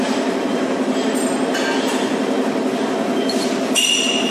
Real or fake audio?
real